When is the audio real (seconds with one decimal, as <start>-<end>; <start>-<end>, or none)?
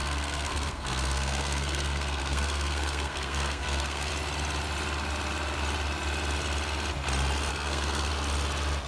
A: 4.1-7.5; 8.1-8.9